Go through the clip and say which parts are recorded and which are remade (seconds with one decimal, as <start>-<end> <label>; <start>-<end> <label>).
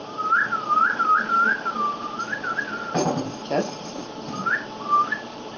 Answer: 0.0-4.0 remade; 4.0-4.8 recorded; 4.8-5.6 remade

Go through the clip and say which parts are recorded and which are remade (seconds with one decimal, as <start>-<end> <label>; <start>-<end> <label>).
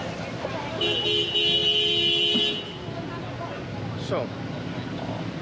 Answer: 0.0-5.4 recorded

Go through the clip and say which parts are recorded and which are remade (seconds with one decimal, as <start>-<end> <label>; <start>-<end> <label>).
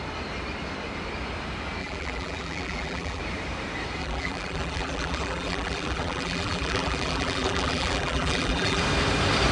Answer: 0.0-1.8 recorded; 1.8-3.2 remade; 3.2-4.0 recorded; 4.0-8.8 remade; 8.8-9.5 recorded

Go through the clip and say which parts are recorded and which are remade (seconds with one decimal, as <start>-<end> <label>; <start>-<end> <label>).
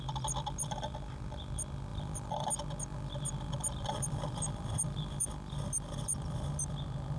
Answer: 0.0-1.9 recorded; 1.9-2.5 remade; 2.5-2.9 recorded; 2.9-5.3 remade; 5.3-7.2 recorded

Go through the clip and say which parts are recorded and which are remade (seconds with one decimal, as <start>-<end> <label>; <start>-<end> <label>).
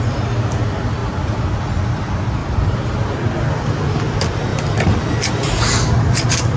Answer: 0.0-2.4 recorded; 2.4-3.4 remade; 3.4-6.6 recorded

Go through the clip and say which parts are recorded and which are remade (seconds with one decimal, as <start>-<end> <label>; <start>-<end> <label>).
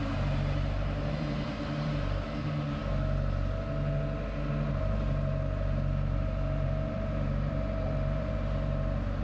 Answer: 0.0-2.8 remade; 2.8-4.7 recorded; 4.7-9.2 remade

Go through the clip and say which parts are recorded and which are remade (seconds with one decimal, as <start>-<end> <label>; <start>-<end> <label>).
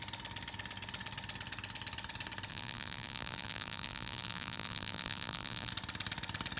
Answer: 0.0-2.5 recorded; 2.5-5.7 remade; 5.7-6.6 recorded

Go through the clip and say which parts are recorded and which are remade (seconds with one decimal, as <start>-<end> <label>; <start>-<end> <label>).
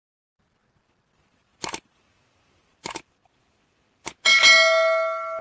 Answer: 0.0-1.5 recorded; 1.5-2.0 remade; 2.0-2.7 recorded; 2.7-3.9 remade; 3.9-5.4 recorded